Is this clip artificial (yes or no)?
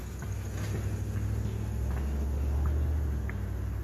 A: no